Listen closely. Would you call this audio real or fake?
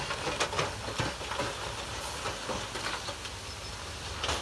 real